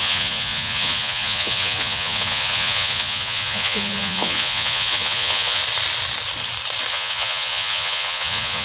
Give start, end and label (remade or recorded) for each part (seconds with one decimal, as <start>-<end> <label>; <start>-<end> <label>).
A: 0.0-5.6 remade; 5.6-6.9 recorded; 6.9-8.6 remade